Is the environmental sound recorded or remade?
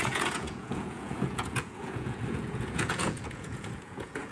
remade